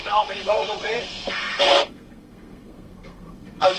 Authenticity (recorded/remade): remade